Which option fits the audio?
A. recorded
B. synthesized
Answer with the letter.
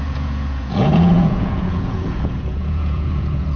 B